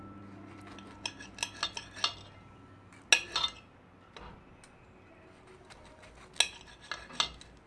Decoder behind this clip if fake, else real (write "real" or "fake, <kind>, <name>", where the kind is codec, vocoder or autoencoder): real